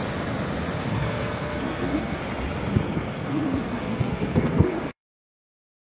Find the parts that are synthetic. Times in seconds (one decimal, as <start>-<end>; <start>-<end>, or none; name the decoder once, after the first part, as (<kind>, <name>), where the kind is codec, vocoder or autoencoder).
0.9-2.2 (codec, SNAC); 2.7-5.3